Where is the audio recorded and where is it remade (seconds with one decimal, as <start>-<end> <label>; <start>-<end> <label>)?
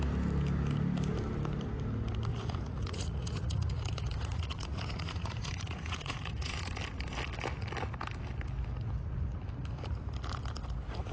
0.0-2.3 recorded; 2.3-6.7 remade; 6.7-11.1 recorded